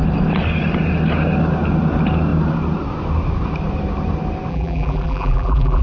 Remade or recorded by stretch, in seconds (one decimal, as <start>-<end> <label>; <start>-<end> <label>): 0.0-4.5 recorded; 4.5-5.8 remade